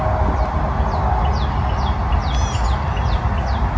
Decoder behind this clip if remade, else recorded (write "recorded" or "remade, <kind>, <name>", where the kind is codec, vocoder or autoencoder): recorded